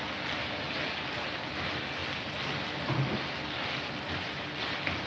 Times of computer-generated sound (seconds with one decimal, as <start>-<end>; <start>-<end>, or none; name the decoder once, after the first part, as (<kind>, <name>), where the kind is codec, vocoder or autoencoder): none

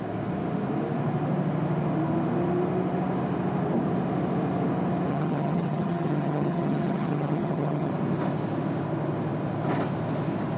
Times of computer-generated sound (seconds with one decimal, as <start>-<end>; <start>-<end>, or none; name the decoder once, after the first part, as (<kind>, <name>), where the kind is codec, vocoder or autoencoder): 5.1-7.9 (vocoder, HiFi-GAN)

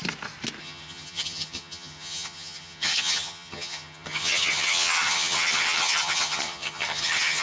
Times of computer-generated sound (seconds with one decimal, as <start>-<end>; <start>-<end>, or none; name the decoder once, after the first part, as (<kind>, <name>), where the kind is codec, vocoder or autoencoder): 0.6-7.4 (vocoder, HiFi-GAN)

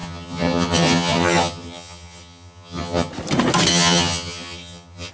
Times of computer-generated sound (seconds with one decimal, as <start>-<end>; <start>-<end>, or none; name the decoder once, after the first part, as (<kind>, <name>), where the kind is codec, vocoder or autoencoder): 0.0-3.1 (vocoder, HiFi-GAN); 3.7-5.1